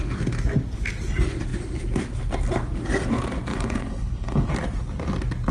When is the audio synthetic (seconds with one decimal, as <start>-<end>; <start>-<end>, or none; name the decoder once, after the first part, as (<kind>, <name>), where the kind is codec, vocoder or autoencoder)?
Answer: 3.5-4.5 (codec, HILCodec)